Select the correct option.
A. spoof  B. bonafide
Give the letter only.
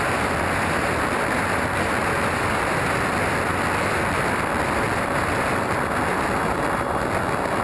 B